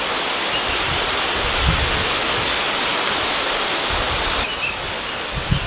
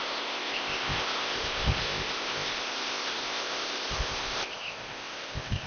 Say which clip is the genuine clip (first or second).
first